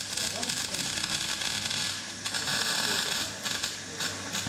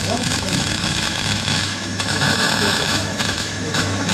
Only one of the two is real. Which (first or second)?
first